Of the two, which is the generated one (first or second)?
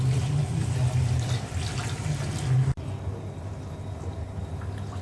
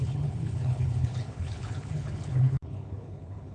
second